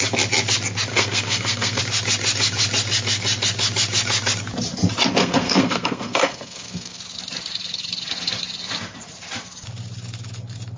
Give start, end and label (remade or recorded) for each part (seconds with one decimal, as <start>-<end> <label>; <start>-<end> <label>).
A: 0.0-0.9 recorded; 0.9-1.8 remade; 1.8-5.2 recorded; 5.2-7.0 remade; 7.0-10.8 recorded